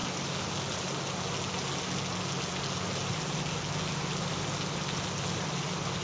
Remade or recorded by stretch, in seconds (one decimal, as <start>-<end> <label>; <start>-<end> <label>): 0.0-6.0 recorded